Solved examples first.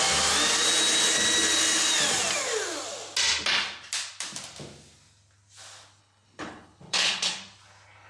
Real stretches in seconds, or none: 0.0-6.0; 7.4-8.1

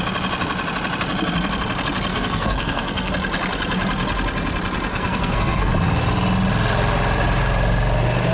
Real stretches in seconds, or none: 0.0-2.1; 3.1-4.9; 5.7-8.3

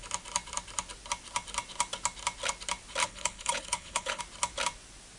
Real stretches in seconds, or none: 0.0-3.0; 4.2-5.2

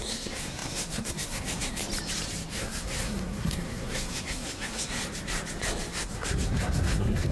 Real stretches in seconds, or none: 1.8-2.5; 5.0-5.9